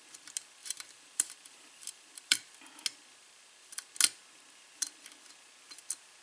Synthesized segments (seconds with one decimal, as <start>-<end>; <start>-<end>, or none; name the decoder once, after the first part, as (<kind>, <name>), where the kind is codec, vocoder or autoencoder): 0.6-2.5 (vocoder, BigVGAN v2); 3.2-3.9